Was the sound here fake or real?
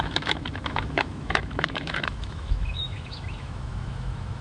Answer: fake